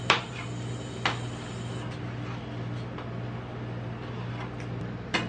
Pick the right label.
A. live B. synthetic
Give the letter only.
A